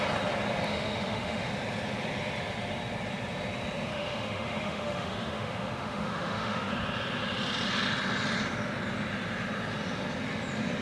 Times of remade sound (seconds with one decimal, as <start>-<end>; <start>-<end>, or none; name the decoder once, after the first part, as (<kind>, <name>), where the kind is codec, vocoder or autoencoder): 0.7-1.5 (autoencoder, DAC-VAE); 3.9-6.7